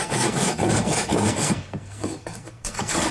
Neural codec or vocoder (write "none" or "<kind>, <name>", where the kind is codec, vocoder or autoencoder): codec, SNAC